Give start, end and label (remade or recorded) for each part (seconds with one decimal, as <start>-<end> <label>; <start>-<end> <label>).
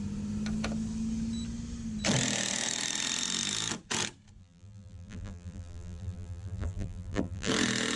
0.0-4.4 recorded; 4.4-7.5 remade; 7.5-8.0 recorded